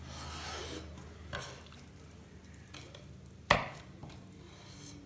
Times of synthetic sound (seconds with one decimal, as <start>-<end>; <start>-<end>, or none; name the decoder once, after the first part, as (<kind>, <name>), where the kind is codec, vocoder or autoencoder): none